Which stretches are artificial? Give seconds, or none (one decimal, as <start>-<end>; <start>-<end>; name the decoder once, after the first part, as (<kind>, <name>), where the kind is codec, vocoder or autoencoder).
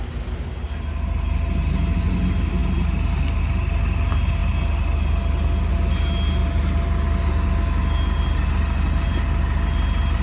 none